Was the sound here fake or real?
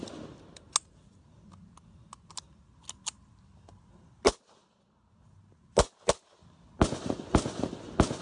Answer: real